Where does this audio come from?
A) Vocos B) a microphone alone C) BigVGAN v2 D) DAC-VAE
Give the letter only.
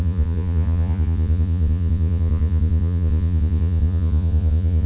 A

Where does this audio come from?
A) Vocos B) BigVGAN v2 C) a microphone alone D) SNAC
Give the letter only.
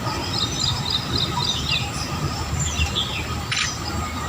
B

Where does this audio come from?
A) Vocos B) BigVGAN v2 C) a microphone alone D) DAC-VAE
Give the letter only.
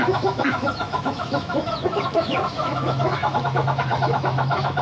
D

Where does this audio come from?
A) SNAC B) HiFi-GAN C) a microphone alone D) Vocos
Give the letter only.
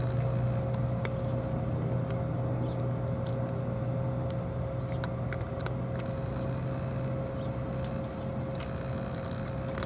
C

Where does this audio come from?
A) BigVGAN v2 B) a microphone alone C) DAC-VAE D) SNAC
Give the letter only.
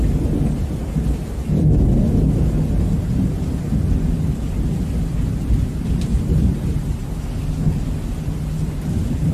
B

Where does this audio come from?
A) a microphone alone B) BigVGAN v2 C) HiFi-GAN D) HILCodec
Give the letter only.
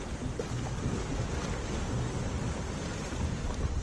A